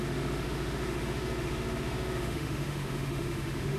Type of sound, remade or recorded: remade